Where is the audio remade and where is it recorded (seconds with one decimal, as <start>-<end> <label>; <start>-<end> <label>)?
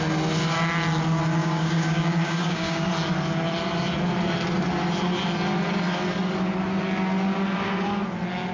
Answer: 0.0-1.4 recorded; 1.4-2.9 remade; 2.9-8.5 recorded